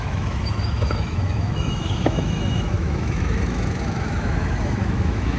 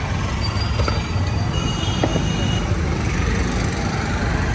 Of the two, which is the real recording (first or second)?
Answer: second